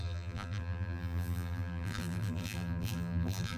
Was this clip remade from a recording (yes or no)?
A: yes